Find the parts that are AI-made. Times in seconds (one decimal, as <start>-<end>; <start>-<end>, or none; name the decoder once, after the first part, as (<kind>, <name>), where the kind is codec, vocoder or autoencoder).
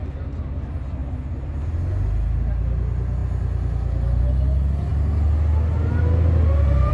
none